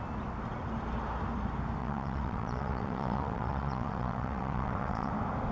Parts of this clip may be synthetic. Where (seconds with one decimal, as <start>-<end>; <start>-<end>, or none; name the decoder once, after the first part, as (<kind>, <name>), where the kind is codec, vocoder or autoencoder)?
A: 1.8-5.1 (vocoder, WaveNeXt)